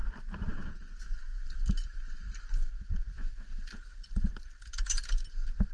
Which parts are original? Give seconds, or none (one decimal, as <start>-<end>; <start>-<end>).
0.0-1.3; 4.7-5.7